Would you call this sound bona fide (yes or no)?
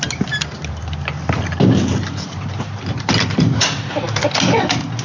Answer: yes